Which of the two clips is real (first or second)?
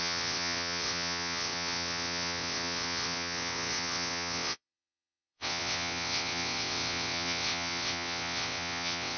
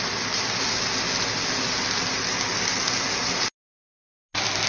second